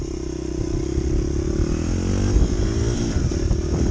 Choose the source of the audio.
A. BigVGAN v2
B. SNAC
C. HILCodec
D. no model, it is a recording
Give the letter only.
D